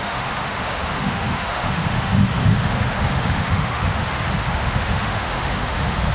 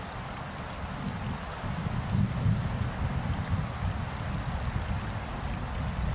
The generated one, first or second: first